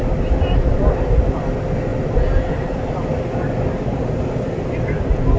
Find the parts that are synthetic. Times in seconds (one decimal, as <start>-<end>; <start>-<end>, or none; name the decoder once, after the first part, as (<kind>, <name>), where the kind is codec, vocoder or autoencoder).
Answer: none